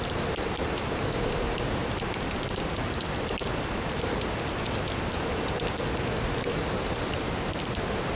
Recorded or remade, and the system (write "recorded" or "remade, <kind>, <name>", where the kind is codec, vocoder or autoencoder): recorded